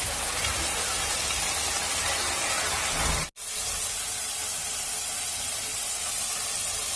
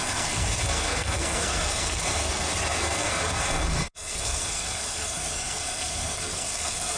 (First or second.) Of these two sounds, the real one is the first